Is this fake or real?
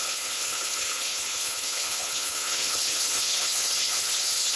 fake